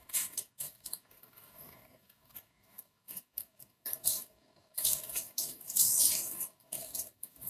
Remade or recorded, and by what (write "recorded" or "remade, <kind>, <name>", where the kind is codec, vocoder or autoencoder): remade, codec, DAC